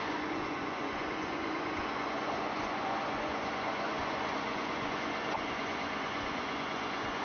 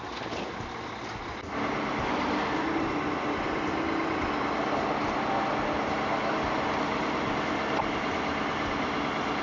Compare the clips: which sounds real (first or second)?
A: second